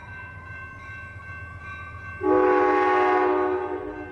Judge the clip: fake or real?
real